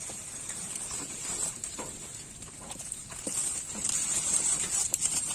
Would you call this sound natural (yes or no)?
no